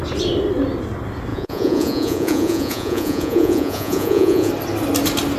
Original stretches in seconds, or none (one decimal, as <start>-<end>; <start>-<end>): 0.0-1.3; 4.5-5.4